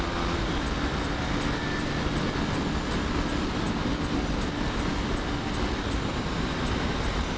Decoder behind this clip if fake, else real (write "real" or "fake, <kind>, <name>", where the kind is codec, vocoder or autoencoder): real